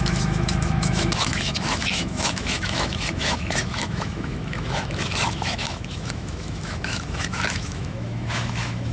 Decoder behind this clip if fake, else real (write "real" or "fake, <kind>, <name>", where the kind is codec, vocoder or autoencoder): fake, autoencoder, DAC-VAE